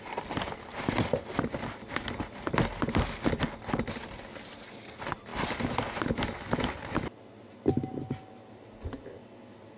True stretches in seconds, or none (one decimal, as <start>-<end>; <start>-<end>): 0.0-9.8